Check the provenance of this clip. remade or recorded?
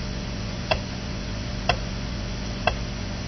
remade